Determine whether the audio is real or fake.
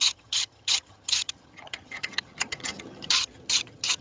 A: fake